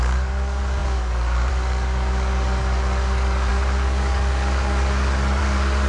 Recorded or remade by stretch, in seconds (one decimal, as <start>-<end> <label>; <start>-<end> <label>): 0.0-5.9 remade